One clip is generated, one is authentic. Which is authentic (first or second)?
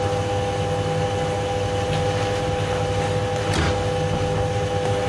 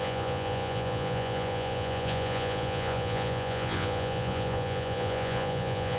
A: first